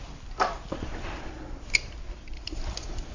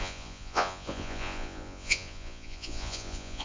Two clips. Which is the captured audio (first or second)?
first